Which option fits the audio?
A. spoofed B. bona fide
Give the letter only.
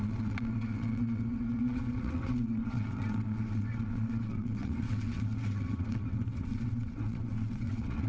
A